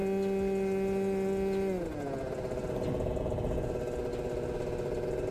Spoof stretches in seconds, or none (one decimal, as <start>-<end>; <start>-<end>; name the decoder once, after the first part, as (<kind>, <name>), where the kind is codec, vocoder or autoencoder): none